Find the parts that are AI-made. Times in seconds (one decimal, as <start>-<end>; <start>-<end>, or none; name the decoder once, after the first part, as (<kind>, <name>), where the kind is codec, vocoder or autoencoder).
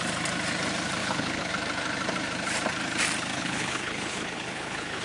1.0-1.5 (codec, HILCodec); 3.3-5.0